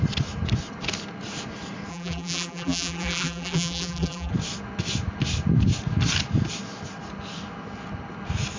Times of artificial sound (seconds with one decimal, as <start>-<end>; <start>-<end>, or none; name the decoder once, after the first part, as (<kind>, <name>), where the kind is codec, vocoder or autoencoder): 1.9-4.3 (vocoder, BigVGAN v2)